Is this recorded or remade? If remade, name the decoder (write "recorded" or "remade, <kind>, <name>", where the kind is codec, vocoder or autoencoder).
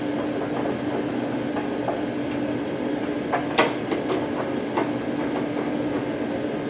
recorded